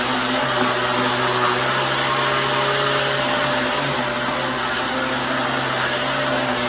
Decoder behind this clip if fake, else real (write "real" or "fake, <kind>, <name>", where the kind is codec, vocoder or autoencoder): real